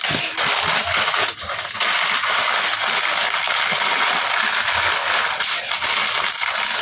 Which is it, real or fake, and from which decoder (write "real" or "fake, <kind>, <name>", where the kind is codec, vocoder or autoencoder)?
real